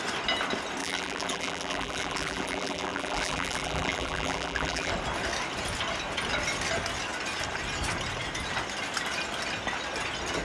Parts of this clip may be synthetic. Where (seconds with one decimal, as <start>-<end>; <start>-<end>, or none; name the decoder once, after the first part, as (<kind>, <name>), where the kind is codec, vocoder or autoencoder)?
0.8-4.9 (vocoder, BigVGAN v2)